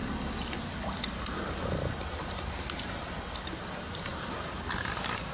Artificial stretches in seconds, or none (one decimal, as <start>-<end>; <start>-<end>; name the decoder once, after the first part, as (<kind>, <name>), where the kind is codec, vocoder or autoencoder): none